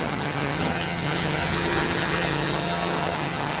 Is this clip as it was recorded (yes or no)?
no